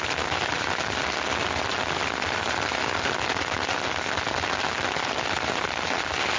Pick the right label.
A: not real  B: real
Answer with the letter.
B